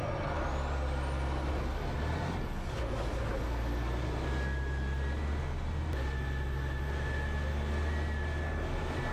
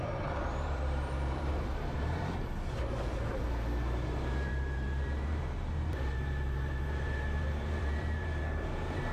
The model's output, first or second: second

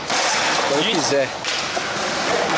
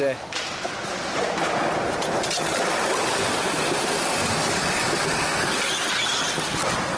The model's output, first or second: second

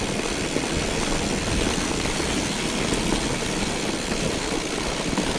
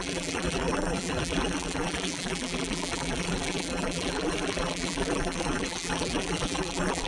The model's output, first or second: second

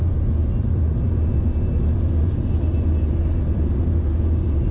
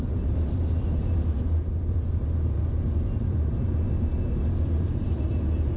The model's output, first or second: second